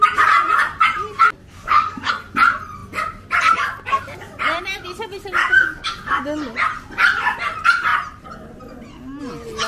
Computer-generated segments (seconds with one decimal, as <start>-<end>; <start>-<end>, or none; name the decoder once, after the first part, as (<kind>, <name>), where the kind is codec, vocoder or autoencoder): 1.4-2.1 (codec, DAC); 5.4-6.2